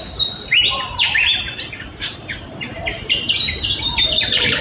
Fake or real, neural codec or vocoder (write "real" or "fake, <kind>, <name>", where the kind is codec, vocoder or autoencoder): fake, vocoder, BigVGAN v2